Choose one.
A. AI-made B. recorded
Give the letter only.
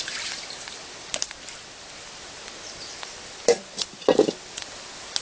B